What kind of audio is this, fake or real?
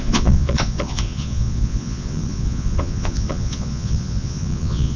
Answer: fake